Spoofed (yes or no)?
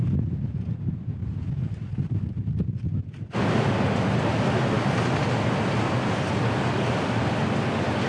no